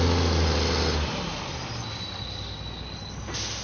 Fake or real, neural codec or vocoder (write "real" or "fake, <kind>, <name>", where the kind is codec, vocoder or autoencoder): real